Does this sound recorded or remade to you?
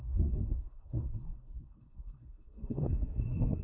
remade